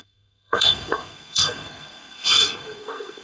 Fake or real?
fake